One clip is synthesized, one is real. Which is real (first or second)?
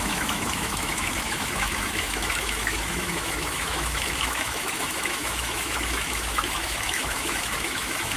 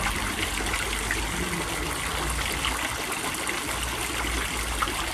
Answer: second